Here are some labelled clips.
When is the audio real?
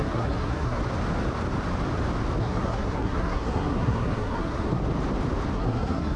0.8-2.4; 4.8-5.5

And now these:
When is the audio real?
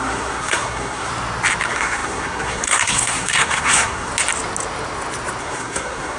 1.1-1.6; 4.1-5.4